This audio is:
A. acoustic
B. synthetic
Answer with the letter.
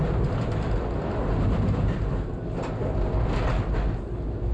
A